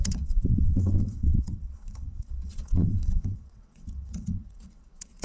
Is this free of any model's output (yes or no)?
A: no